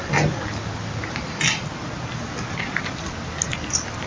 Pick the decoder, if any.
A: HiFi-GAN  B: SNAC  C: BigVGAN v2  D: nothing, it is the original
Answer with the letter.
D